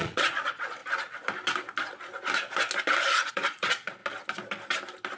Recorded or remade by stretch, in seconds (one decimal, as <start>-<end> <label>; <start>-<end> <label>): 0.0-0.8 remade; 0.8-3.3 recorded; 3.3-4.0 remade; 4.0-5.2 recorded